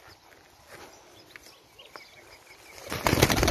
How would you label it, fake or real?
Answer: real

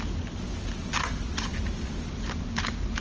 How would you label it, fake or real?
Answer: real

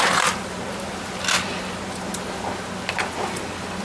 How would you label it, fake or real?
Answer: real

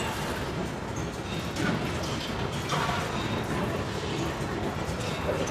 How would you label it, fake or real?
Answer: real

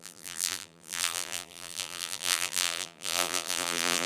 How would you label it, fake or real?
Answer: fake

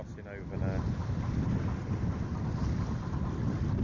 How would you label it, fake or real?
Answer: real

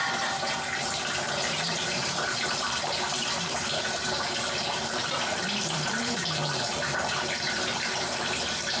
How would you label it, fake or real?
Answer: fake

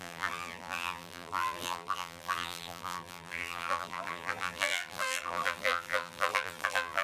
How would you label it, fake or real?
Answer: fake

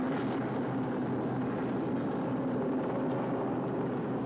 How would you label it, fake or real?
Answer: real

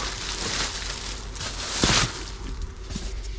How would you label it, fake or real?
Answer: real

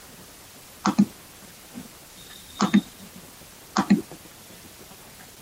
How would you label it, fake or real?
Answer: real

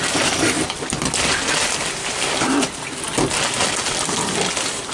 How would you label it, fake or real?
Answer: real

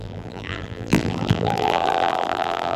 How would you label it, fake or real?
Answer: fake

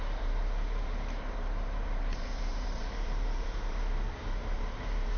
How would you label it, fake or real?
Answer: fake